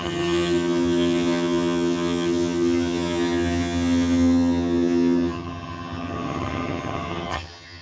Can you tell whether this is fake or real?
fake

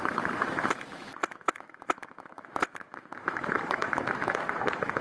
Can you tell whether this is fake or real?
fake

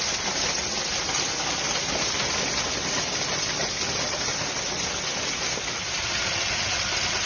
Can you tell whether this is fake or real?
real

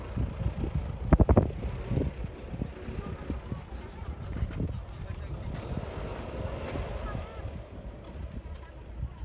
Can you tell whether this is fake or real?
real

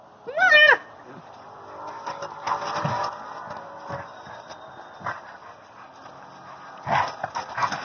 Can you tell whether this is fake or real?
real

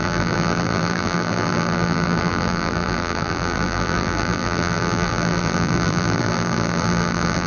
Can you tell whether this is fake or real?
fake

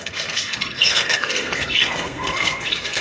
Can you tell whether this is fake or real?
fake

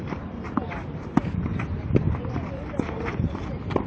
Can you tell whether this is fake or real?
real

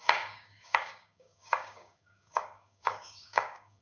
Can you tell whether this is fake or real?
fake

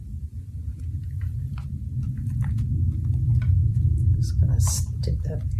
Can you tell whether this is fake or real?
fake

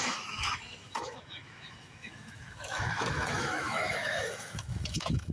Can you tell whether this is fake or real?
fake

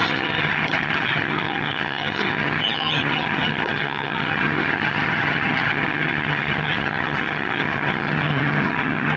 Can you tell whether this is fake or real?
fake